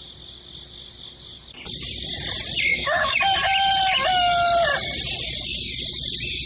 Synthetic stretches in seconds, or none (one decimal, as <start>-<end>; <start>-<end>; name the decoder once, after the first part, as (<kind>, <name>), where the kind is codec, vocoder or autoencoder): 2.7-3.2 (autoencoder, DAC-VAE)